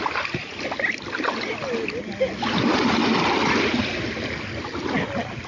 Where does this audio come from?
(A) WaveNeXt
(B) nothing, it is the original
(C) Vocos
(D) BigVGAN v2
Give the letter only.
B